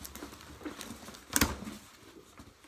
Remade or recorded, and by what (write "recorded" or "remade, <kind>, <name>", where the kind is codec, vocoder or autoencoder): recorded